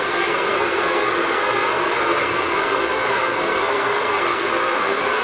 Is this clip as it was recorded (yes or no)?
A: no